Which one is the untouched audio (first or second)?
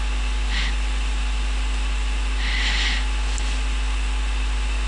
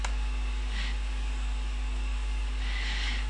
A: first